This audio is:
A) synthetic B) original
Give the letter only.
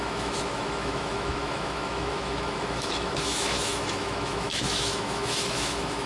A